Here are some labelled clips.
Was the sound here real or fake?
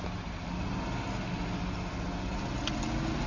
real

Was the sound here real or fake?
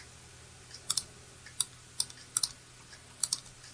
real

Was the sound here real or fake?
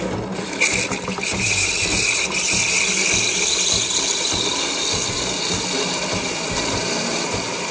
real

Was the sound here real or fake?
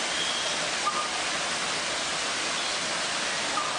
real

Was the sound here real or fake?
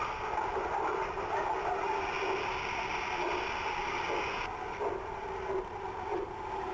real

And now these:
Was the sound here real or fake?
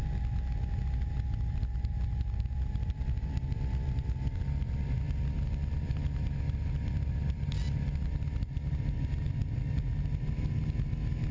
real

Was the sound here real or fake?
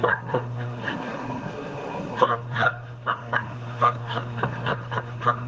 fake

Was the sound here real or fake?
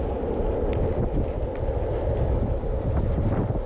real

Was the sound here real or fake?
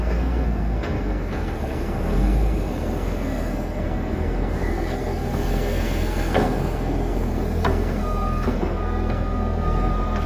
fake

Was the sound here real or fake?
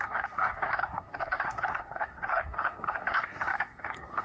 fake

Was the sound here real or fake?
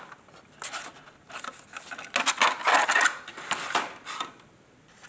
real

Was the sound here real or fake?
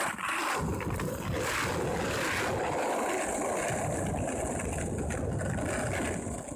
real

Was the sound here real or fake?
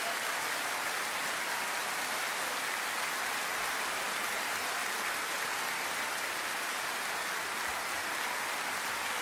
real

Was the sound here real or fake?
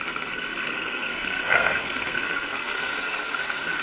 fake